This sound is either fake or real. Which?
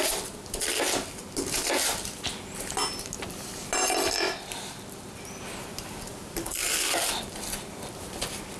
real